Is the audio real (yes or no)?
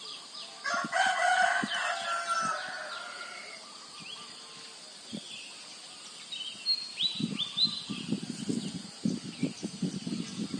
yes